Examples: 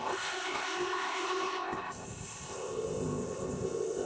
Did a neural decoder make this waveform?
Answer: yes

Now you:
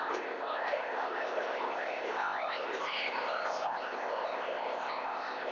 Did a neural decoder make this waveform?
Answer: yes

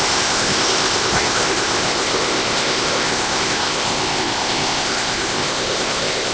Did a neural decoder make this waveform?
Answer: yes